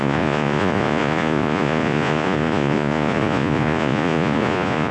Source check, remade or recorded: remade